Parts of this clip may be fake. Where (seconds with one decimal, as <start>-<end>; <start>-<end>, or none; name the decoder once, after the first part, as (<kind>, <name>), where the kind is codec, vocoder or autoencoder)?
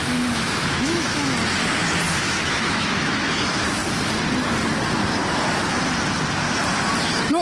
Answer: 0.0-1.4 (autoencoder, DAC-VAE); 2.2-3.8